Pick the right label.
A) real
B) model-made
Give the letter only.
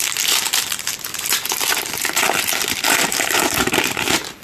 B